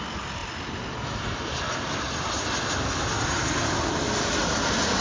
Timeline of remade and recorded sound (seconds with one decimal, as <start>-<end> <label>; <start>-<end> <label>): 0.0-5.0 recorded